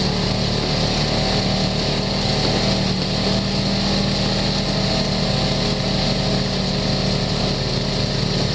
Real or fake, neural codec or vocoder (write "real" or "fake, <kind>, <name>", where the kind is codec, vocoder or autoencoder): real